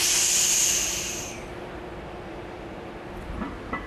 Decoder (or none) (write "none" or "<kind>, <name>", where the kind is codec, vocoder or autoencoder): none